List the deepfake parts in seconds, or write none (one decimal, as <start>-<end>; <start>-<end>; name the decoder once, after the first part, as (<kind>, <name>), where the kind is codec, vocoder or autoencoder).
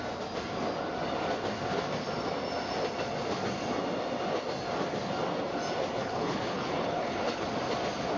6.0-7.5 (codec, HILCodec)